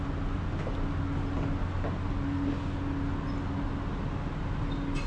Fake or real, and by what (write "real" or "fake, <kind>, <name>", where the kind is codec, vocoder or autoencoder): real